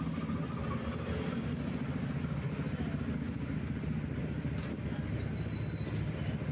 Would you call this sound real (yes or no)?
yes